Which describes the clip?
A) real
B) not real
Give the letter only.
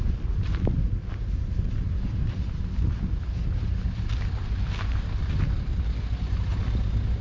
A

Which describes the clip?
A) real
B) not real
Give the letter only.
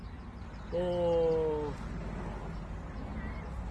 A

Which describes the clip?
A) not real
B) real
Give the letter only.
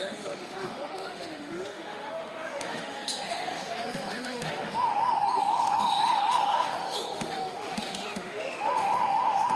A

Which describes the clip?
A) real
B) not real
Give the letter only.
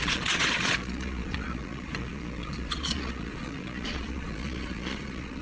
B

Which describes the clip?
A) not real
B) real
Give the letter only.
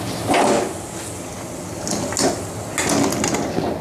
B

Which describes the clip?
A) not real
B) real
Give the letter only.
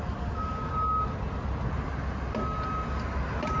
B